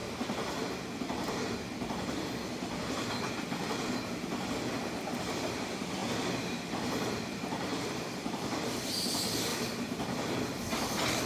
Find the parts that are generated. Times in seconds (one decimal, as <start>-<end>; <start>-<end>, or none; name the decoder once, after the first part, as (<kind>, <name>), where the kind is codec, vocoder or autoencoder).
7.7-8.3 (vocoder, BigVGAN v2); 9.5-11.3